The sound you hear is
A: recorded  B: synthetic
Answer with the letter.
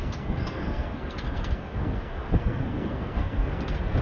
B